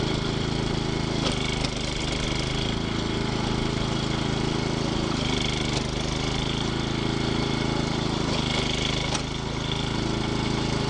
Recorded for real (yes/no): yes